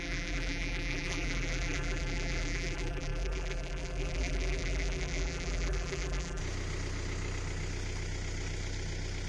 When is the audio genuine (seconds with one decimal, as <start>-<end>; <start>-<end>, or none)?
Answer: 6.4-9.3